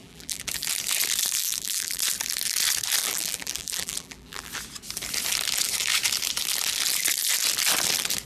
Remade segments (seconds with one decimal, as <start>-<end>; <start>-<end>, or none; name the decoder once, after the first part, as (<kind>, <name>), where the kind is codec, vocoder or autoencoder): 0.0-0.7 (vocoder, BigVGAN v2); 1.4-2.0; 3.0-4.5